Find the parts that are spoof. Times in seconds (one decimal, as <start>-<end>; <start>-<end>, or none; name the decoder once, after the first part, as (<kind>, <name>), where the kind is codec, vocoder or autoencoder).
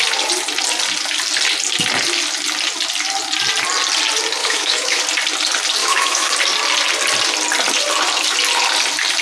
4.4-5.0 (autoencoder, DAC-VAE); 5.8-6.3